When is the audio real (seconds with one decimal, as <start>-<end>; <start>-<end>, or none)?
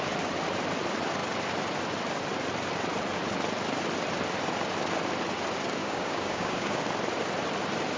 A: 0.0-5.8; 6.8-8.0